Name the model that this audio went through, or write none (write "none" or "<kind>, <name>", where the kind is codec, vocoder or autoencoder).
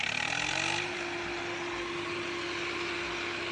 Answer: none